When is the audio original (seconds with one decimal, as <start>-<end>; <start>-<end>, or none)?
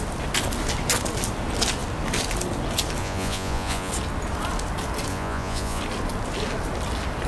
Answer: 0.0-3.0; 3.9-5.1; 5.8-7.3